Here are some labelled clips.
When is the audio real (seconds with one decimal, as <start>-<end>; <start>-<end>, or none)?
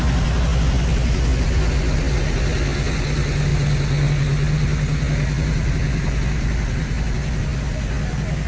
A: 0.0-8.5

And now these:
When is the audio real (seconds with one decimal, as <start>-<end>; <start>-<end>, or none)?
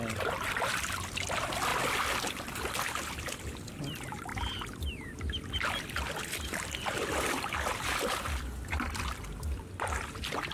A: 0.0-10.5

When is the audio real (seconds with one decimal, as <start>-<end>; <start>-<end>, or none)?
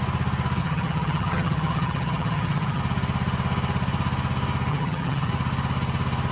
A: 0.0-0.6; 2.8-4.7; 5.3-6.3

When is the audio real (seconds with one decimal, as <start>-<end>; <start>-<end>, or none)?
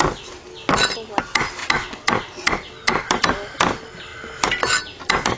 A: 0.0-5.4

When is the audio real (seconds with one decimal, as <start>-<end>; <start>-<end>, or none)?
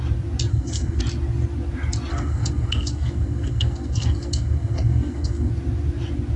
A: 0.0-0.5; 1.0-2.1; 5.5-6.4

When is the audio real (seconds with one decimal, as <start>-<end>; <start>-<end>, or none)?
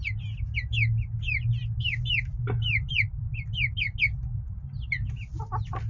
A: 0.0-5.9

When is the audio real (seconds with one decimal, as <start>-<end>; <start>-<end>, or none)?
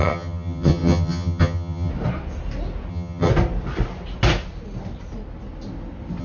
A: 1.9-2.9; 3.3-6.2